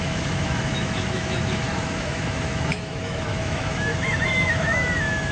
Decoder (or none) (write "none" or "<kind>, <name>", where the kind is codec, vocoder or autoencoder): autoencoder, DAC-VAE